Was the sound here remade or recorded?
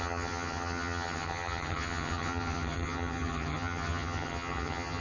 remade